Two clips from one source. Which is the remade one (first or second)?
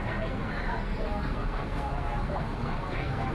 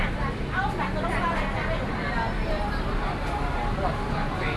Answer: first